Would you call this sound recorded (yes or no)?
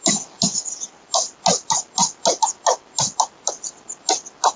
yes